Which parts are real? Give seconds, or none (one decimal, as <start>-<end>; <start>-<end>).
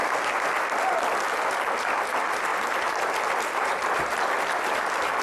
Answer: 0.0-5.2